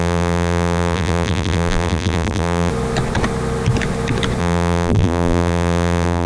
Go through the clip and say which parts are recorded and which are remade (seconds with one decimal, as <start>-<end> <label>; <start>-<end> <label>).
0.0-2.7 remade; 2.7-4.4 recorded; 4.4-6.3 remade